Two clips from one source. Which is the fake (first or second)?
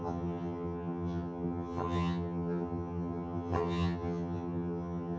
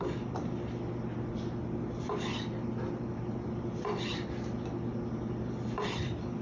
first